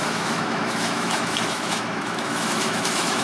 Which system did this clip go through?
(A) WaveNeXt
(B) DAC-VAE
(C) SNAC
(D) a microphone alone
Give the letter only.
B